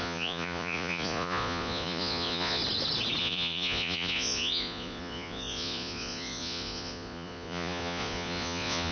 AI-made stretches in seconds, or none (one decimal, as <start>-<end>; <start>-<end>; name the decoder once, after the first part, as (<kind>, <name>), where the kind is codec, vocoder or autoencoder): 0.0-2.6 (vocoder, Vocos); 3.2-8.9